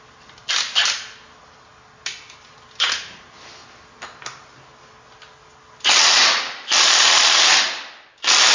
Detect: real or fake real